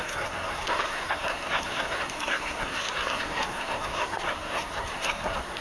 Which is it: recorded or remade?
remade